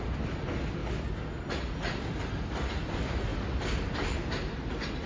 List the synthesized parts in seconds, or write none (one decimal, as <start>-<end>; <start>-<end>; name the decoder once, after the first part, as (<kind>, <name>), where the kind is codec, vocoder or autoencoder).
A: none